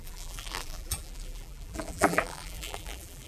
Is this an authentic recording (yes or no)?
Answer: no